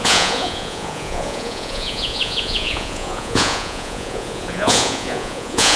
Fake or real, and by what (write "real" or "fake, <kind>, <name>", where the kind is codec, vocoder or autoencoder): fake, vocoder, Vocos